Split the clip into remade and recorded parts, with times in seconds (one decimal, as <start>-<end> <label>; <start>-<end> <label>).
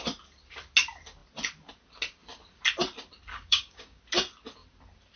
0.0-3.3 recorded; 3.3-4.0 remade; 4.0-5.2 recorded